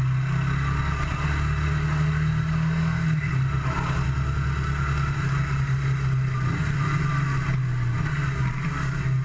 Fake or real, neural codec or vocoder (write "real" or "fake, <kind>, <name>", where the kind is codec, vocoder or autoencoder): real